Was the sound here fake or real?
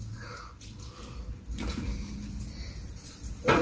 real